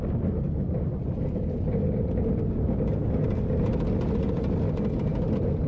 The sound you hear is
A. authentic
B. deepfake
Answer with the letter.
A